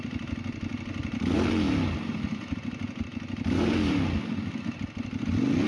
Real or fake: real